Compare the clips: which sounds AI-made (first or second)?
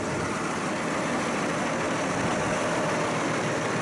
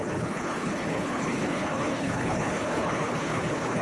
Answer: second